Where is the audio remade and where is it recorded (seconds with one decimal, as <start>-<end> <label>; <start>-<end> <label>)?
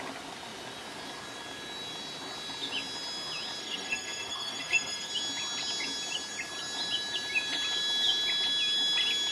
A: 0.0-3.6 recorded; 3.6-5.1 remade; 5.1-9.3 recorded